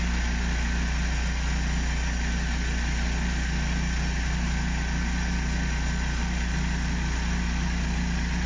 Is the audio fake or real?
real